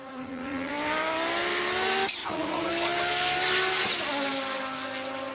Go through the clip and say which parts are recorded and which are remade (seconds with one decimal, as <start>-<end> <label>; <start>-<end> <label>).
0.0-0.7 remade; 0.7-2.2 recorded; 2.2-2.7 remade; 2.7-5.3 recorded